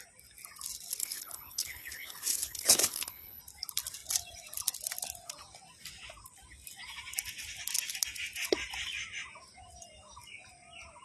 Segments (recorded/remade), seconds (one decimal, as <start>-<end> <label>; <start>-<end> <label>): 0.0-1.0 recorded; 1.0-3.4 remade; 3.4-11.0 recorded